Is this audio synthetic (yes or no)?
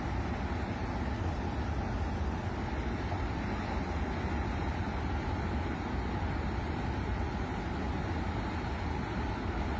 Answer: no